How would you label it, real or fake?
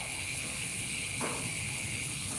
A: fake